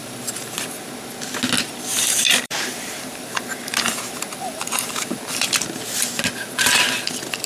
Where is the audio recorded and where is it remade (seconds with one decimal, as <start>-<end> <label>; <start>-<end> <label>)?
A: 0.0-0.9 remade; 0.9-1.9 recorded; 1.9-5.2 remade; 5.2-7.5 recorded